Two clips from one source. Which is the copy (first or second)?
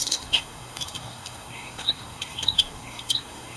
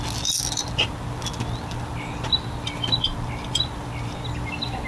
first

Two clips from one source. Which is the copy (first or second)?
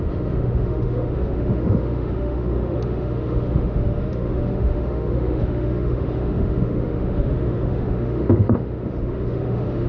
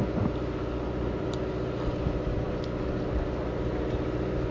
first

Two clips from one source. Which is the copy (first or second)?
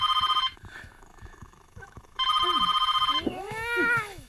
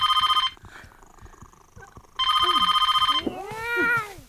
first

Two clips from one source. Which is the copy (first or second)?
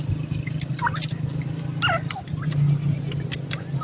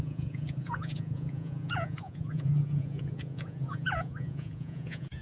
second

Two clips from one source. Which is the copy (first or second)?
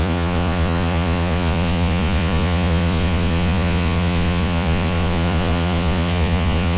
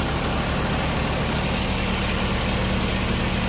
first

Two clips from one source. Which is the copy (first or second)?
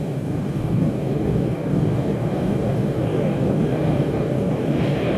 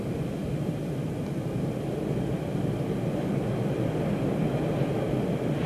first